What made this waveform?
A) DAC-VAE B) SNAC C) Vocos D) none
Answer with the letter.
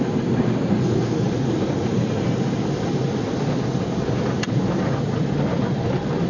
D